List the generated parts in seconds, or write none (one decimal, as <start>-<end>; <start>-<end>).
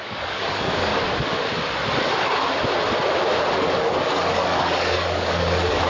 0.0-0.9; 3.6-5.9